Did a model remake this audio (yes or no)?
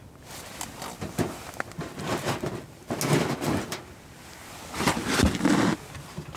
no